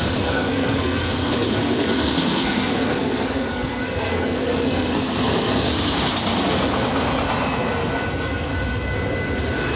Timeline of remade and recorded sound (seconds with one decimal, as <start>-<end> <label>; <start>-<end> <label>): 0.0-5.7 remade; 5.7-8.1 recorded; 8.1-8.5 remade; 8.5-9.8 recorded